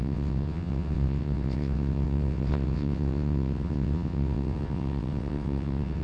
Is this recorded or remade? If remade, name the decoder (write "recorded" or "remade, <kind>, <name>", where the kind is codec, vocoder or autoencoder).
remade, vocoder, WaveNeXt